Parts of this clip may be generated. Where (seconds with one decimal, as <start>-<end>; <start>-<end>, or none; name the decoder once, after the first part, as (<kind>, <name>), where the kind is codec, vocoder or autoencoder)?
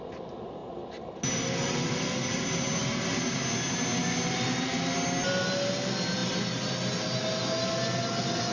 none